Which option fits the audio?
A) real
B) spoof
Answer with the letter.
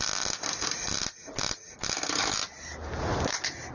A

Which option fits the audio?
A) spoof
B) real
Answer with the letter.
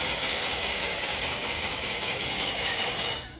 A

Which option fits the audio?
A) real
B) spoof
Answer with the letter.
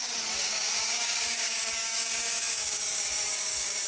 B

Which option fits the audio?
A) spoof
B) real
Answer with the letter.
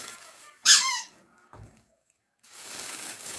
A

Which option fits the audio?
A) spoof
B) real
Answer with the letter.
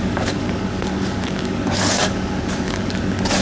A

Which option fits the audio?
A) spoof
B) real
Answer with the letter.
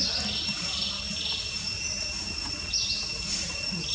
B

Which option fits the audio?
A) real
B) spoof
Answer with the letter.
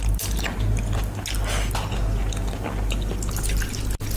A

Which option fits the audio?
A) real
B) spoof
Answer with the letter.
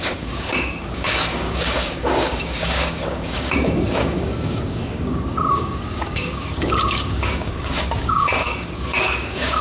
B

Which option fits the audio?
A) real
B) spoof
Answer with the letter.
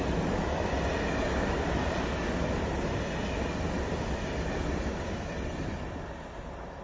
A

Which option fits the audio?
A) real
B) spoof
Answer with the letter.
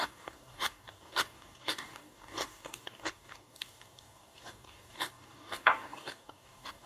B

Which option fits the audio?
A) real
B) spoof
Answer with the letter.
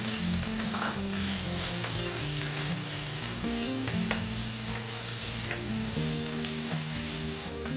B